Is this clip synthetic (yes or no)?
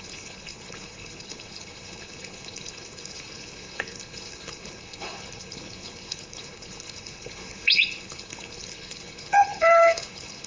yes